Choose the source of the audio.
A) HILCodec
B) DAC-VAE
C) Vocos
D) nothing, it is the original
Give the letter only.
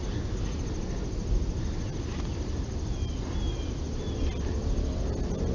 D